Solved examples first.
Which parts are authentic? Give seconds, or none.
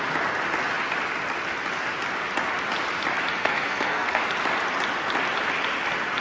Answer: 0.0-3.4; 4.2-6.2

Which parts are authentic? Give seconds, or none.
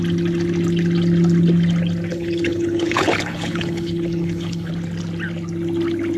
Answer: 0.0-2.1; 4.7-6.2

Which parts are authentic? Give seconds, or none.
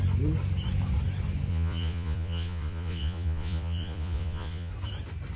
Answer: 0.0-1.5; 4.7-5.4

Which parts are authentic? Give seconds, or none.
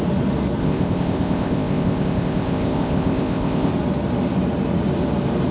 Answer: 0.0-0.6; 3.7-5.5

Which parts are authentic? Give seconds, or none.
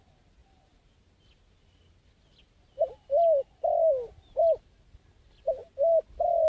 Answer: 0.0-6.5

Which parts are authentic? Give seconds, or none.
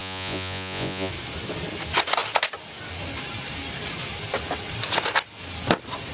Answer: 1.1-6.1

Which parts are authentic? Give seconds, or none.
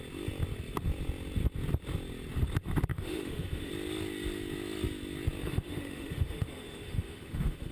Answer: 0.0-2.9; 3.7-5.4